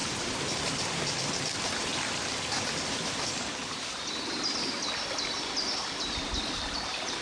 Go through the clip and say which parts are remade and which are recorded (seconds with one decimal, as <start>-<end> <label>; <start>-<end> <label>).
0.0-7.2 remade